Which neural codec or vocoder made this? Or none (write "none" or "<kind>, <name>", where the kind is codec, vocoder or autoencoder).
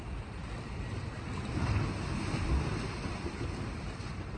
none